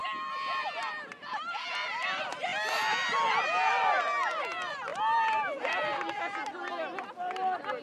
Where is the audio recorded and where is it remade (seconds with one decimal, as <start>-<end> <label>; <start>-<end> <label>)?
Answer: 0.0-7.8 recorded